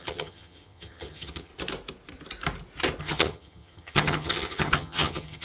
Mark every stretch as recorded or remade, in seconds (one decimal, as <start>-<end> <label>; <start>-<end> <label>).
0.0-1.5 remade; 1.5-3.0 recorded; 3.0-5.4 remade